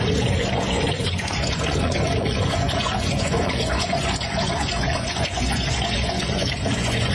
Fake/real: fake